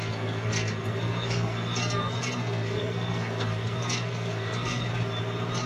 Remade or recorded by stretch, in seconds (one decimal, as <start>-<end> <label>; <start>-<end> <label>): 0.0-4.9 remade; 4.9-5.7 recorded